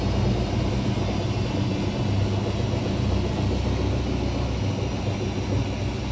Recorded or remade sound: recorded